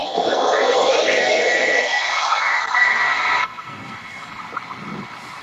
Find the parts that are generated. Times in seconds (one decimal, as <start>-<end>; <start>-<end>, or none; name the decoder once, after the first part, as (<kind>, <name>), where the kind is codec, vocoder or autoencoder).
0.0-4.4 (codec, SNAC)